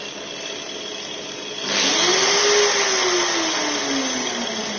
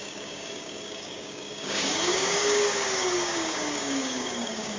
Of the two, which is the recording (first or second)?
first